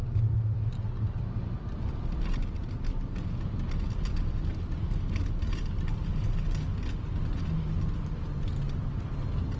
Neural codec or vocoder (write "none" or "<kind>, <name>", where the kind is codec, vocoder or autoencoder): none